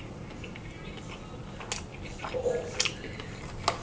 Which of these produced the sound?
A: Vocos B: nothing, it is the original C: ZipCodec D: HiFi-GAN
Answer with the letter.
B